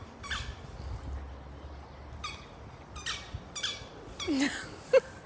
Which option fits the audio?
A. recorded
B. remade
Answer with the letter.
A